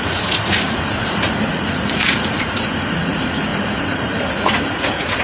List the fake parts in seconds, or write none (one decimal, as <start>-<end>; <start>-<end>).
0.0-5.2